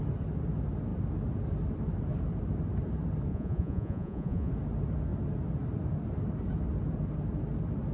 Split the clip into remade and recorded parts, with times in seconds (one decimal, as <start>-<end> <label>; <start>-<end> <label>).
0.0-3.3 recorded; 3.3-4.5 remade; 4.5-7.9 recorded